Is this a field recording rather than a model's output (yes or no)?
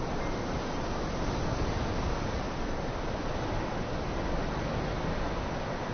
yes